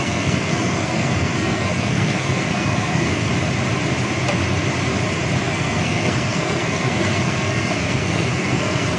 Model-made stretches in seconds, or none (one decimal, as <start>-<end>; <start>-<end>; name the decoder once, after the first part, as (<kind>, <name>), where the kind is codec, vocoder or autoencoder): 0.0-3.3 (codec, SNAC); 5.4-9.0